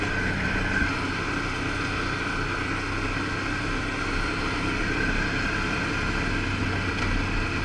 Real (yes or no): yes